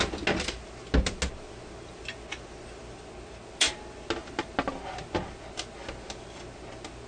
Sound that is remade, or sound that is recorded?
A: recorded